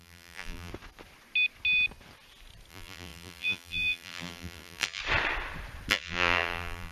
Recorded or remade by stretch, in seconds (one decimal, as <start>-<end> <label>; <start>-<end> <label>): 0.0-0.7 remade; 0.7-2.7 recorded; 2.7-5.0 remade; 5.0-5.9 recorded; 5.9-6.9 remade